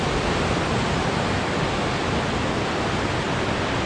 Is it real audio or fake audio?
real